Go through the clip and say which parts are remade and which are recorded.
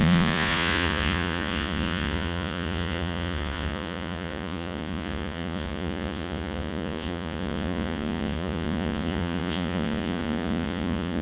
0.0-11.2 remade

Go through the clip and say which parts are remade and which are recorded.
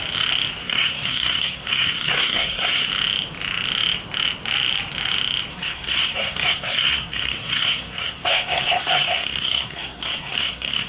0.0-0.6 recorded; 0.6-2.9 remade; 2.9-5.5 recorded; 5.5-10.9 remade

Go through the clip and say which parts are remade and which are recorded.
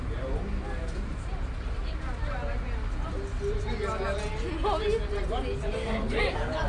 0.0-6.7 recorded